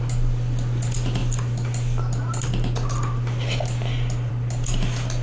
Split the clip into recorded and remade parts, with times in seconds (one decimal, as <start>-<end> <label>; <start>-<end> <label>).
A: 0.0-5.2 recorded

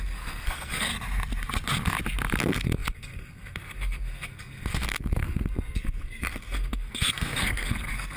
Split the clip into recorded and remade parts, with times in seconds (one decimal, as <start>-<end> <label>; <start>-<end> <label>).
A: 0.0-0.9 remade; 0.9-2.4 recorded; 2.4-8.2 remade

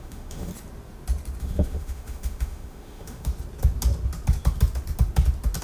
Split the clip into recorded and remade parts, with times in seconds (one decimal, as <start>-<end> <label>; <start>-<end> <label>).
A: 0.0-0.5 remade; 0.5-1.4 recorded; 1.4-3.3 remade; 3.3-5.6 recorded

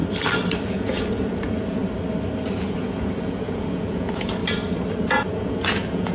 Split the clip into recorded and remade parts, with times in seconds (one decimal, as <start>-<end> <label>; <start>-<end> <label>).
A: 0.0-0.7 recorded; 0.7-1.8 remade; 1.8-2.6 recorded; 2.6-4.4 remade; 4.4-5.0 recorded; 5.0-6.1 remade